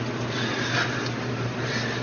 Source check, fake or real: real